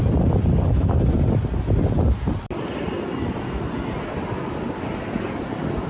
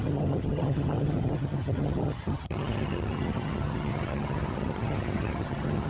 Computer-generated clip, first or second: second